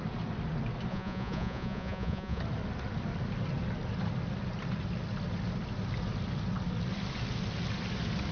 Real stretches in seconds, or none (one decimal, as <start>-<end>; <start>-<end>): 0.0-0.9; 2.4-8.3